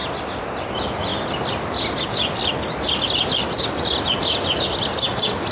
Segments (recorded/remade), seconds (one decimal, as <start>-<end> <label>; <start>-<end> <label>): 0.0-5.5 recorded